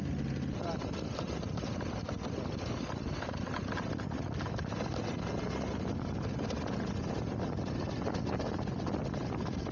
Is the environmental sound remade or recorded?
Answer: recorded